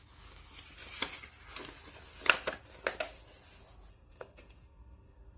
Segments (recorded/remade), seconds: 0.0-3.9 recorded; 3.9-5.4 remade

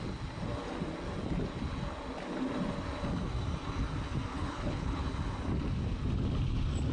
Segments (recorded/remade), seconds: 0.0-4.3 recorded; 4.3-5.0 remade; 5.0-6.9 recorded

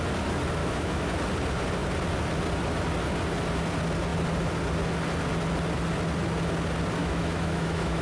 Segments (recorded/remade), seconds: 0.0-0.6 recorded; 0.6-1.1 remade; 1.1-7.0 recorded; 7.0-8.0 remade

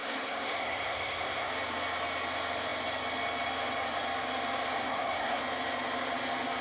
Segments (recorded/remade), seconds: 0.0-1.5 remade; 1.5-4.8 recorded; 4.8-5.4 remade; 5.4-6.6 recorded

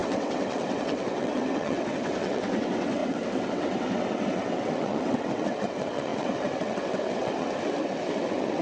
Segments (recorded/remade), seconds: 0.0-8.6 remade